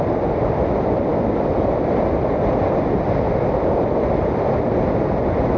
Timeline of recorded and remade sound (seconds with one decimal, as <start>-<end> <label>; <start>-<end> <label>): 0.0-5.6 recorded